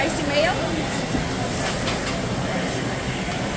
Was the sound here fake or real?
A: real